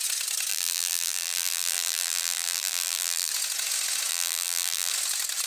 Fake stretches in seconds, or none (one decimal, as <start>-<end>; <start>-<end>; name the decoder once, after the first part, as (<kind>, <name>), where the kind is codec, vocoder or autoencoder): 0.5-3.3 (vocoder, BigVGAN v2); 4.1-4.9